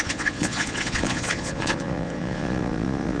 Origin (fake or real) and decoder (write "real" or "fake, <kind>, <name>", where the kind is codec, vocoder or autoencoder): fake, vocoder, Vocos